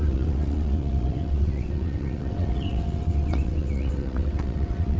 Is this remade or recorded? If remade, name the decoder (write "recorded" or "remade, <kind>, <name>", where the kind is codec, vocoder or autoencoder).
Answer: remade, vocoder, WaveNeXt